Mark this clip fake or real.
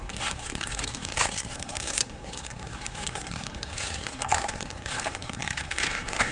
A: fake